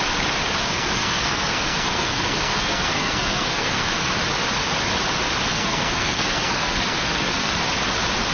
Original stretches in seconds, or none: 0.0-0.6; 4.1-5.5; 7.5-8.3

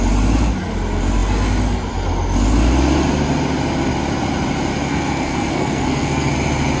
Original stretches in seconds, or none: 0.0-4.9; 6.3-6.8

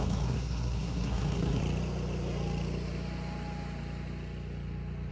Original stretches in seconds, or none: 1.6-5.1

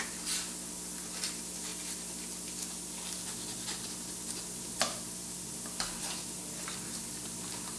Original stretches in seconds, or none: 0.0-7.8

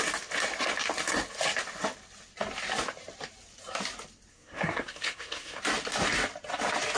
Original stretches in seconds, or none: 0.0-4.3; 5.6-7.0

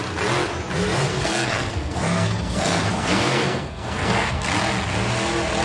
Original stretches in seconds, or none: 0.0-1.1; 4.5-5.6

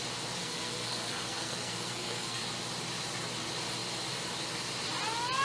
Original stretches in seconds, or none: 0.0-0.4; 2.4-5.4